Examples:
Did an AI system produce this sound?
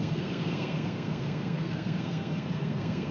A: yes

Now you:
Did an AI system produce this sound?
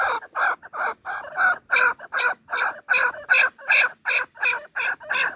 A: no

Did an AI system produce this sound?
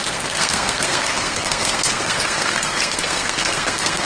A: yes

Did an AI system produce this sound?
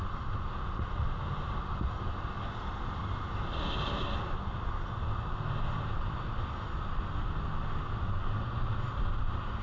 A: no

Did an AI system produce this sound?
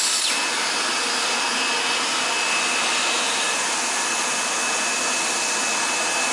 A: no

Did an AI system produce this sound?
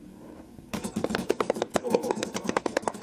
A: yes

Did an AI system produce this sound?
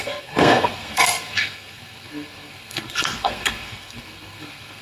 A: yes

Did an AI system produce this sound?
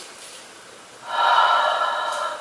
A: no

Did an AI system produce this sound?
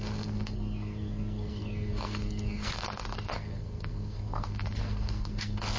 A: yes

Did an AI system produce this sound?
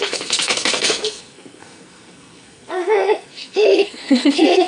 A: yes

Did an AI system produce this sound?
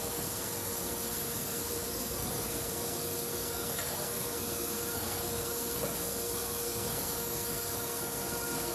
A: yes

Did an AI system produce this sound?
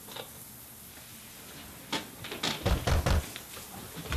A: no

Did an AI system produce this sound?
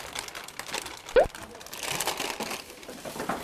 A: no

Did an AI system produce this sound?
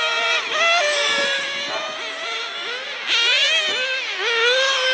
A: no